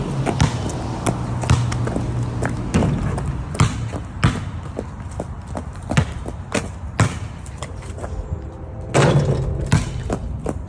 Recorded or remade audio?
recorded